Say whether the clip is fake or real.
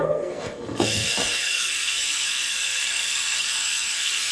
fake